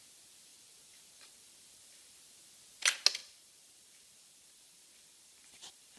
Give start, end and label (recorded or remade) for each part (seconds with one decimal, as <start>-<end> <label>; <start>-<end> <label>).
0.0-0.5 recorded; 0.5-2.2 remade; 2.2-3.2 recorded; 3.2-6.0 remade